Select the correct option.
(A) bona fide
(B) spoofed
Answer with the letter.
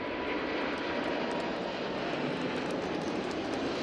A